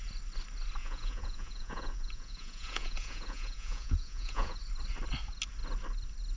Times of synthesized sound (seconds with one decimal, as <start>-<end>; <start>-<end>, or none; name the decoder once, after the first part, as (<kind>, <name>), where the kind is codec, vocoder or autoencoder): 0.8-4.6 (vocoder, Vocos)